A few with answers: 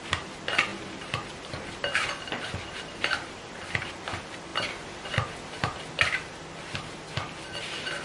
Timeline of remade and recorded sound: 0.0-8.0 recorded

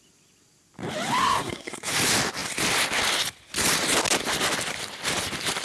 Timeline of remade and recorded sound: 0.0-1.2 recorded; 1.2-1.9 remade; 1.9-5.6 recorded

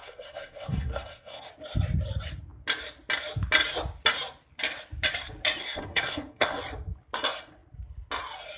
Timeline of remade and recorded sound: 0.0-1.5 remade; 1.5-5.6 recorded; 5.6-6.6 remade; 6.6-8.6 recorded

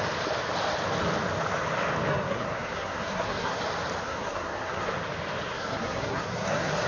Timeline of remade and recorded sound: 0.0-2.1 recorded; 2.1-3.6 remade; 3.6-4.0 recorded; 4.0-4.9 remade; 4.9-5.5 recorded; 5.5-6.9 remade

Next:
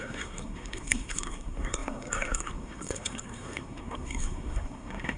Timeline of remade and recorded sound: 0.0-5.2 remade

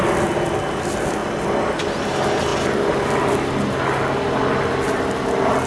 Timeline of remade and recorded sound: 0.0-5.7 recorded

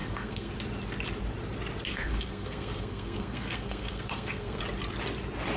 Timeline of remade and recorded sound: 0.0-0.5 remade; 0.5-1.9 recorded; 1.9-4.6 remade; 4.6-5.6 recorded